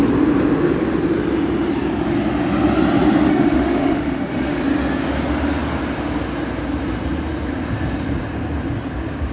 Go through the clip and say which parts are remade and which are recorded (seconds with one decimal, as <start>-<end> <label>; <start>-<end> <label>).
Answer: 0.0-3.3 recorded; 3.3-4.6 remade; 4.6-9.3 recorded